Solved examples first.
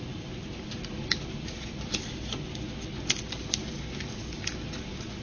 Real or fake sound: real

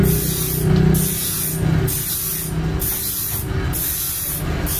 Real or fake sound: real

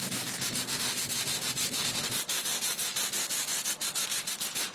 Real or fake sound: real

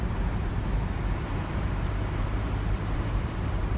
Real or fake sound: fake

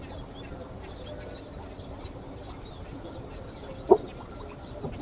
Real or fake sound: real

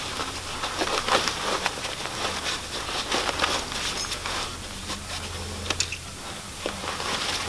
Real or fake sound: real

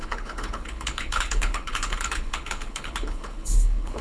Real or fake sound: fake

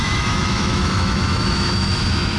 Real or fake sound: fake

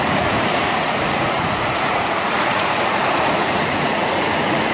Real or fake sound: fake